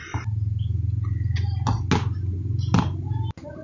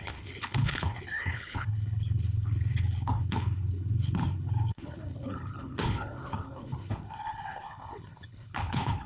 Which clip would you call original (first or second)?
first